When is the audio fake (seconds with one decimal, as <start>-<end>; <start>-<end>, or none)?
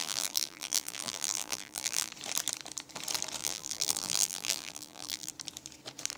0.0-2.1; 3.4-5.3